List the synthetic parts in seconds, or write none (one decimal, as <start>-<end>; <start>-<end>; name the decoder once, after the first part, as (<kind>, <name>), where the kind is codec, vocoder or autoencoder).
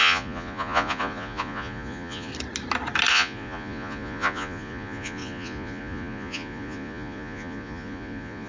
0.0-2.3 (vocoder, Vocos); 3.1-8.5